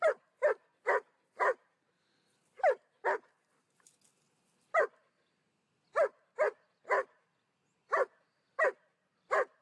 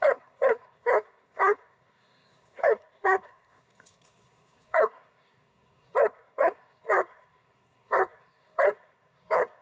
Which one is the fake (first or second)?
second